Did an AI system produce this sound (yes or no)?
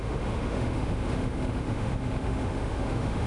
yes